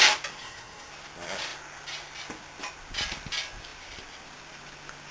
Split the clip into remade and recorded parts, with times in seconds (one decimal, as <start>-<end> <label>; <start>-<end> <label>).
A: 0.0-0.4 recorded; 0.4-0.9 remade; 0.9-5.1 recorded